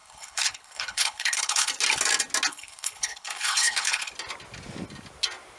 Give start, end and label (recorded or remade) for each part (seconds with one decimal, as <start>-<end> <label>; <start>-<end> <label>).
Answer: 0.0-1.7 remade; 1.7-2.5 recorded; 2.5-4.1 remade; 4.1-5.6 recorded